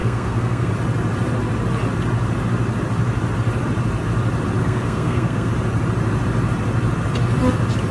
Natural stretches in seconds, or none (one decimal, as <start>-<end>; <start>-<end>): 0.7-4.6; 5.5-7.9